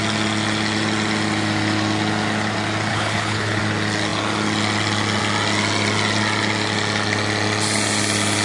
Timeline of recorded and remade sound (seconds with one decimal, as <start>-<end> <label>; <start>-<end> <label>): 0.0-2.9 recorded; 2.9-3.6 remade; 3.6-8.4 recorded